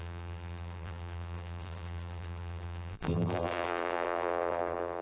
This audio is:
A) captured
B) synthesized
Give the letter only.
B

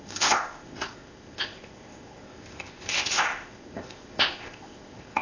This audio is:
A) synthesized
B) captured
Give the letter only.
A